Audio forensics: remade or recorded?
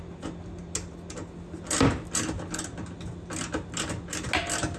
recorded